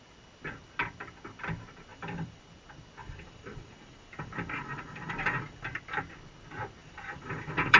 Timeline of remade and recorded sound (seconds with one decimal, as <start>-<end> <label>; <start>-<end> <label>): 0.0-1.9 recorded; 1.9-2.4 remade; 2.4-3.0 recorded; 3.0-6.0 remade; 6.0-6.8 recorded; 6.8-7.8 remade